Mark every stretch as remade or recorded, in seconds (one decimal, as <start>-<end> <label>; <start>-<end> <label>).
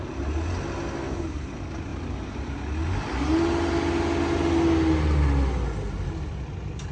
0.0-6.9 recorded